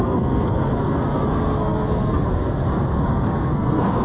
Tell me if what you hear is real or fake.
fake